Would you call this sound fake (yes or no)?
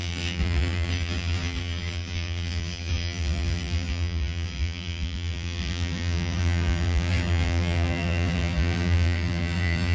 yes